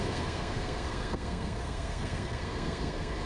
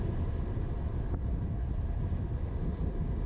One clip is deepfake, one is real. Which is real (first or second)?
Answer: second